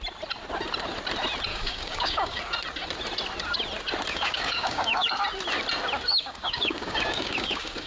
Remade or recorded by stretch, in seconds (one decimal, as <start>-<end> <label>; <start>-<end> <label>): 0.0-1.5 recorded; 1.5-2.4 remade; 2.4-4.1 recorded; 4.1-5.1 remade; 5.1-6.1 recorded; 6.1-7.9 remade